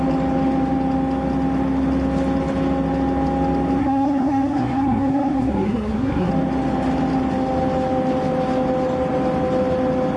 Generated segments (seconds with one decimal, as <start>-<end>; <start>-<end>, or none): 3.8-6.3